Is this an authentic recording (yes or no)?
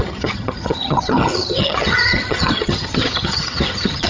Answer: no